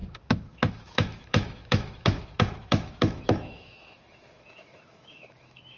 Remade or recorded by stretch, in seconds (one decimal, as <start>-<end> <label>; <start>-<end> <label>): 0.0-5.8 remade